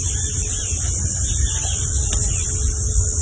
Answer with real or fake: real